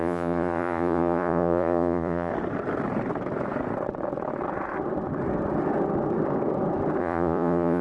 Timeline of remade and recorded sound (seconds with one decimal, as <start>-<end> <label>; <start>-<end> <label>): 0.0-2.3 remade; 2.3-7.0 recorded; 7.0-7.8 remade